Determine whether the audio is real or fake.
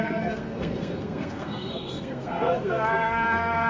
fake